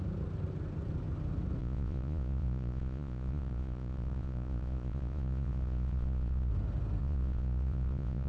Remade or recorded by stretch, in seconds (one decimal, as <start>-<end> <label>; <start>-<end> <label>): 0.0-1.6 recorded; 1.6-6.5 remade; 6.5-7.0 recorded; 7.0-8.3 remade

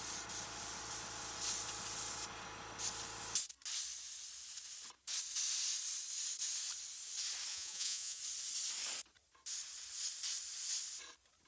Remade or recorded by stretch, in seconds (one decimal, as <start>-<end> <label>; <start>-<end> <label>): 0.0-7.5 recorded; 7.5-8.2 remade; 8.2-11.5 recorded

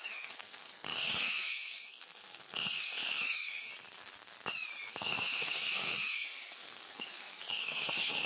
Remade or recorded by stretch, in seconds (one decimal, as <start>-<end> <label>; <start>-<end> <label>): 0.0-3.7 remade; 3.7-4.9 recorded; 4.9-8.3 remade

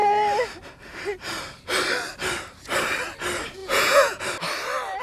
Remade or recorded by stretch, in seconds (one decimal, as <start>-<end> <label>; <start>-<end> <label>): 0.0-3.6 recorded; 3.6-4.2 remade; 4.2-5.0 recorded

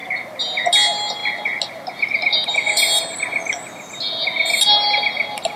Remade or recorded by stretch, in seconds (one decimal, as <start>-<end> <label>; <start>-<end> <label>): 0.0-5.6 recorded

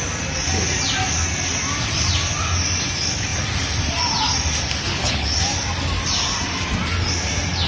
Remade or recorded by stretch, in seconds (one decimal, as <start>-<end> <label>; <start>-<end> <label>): 0.0-4.9 recorded; 4.9-5.4 remade; 5.4-7.7 recorded